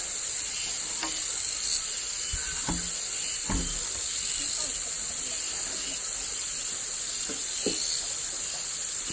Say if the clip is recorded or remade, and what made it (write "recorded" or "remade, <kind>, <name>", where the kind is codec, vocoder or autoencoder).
recorded